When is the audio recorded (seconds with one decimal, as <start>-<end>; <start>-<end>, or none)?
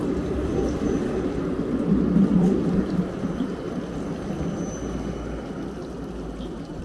0.0-6.8